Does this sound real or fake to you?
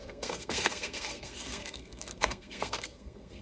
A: fake